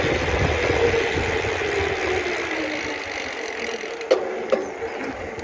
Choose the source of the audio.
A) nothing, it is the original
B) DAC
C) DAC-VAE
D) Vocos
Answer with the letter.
A